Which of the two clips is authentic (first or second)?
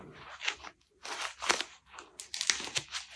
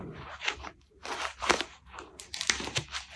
first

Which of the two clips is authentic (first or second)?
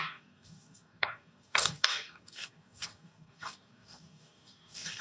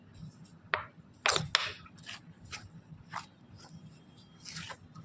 second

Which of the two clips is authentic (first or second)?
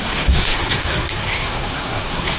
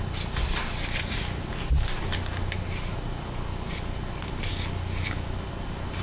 second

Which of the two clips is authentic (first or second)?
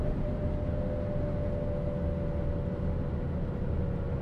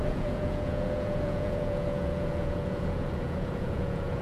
first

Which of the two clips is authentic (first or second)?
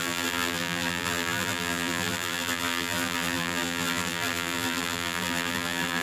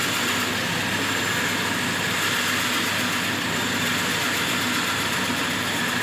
second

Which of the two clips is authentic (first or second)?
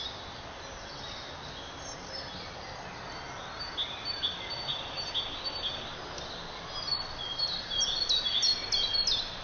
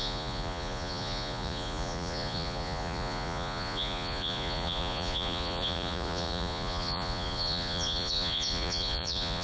first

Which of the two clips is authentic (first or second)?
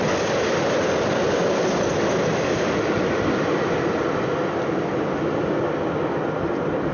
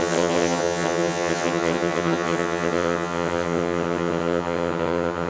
first